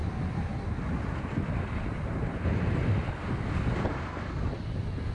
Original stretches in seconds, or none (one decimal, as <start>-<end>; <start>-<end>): 3.1-5.1